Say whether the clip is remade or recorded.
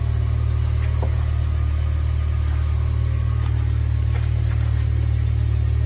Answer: recorded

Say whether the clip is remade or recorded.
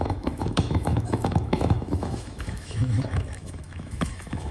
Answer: remade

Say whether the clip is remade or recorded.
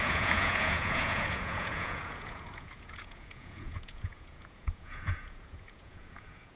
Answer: remade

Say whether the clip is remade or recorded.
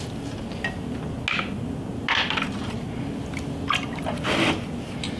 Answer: recorded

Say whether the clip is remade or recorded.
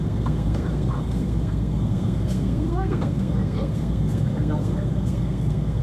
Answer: remade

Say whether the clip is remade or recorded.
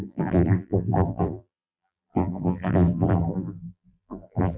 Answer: remade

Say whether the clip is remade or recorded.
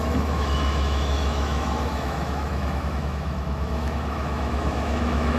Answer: remade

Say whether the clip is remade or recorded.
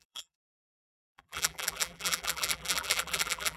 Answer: remade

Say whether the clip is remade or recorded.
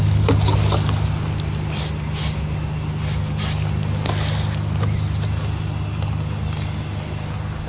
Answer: recorded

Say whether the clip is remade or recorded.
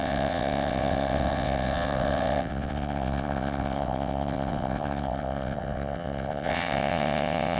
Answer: remade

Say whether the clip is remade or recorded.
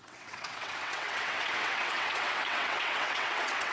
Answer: remade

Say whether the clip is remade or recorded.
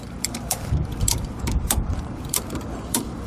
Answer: remade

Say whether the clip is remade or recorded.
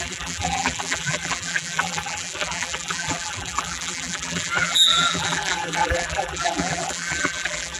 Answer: remade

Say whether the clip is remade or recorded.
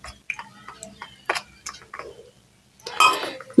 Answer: recorded